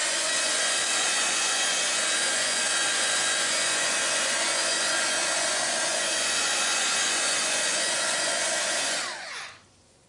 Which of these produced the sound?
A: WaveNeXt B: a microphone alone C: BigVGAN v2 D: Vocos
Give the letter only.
D